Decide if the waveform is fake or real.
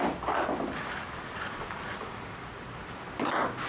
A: real